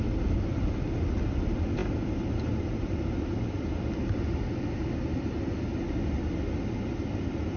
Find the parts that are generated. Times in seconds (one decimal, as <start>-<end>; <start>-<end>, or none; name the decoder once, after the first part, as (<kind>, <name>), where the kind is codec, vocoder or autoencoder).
none